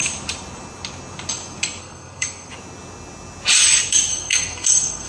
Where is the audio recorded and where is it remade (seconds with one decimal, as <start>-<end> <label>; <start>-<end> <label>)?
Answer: 0.0-1.8 recorded; 1.8-2.5 remade; 2.5-4.1 recorded; 4.1-5.1 remade